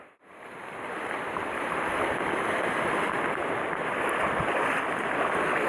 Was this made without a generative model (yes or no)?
yes